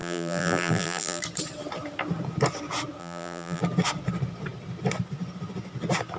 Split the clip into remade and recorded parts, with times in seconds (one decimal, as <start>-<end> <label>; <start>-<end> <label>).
0.0-1.2 remade; 1.2-3.0 recorded; 3.0-3.6 remade; 3.6-6.2 recorded